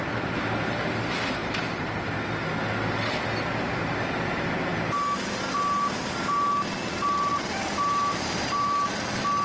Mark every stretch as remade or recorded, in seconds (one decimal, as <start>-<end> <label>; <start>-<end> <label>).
0.0-9.4 recorded